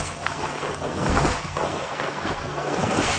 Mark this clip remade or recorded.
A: remade